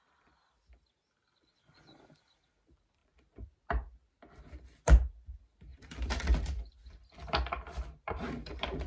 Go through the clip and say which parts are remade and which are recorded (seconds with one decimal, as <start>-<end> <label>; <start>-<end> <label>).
0.0-8.9 recorded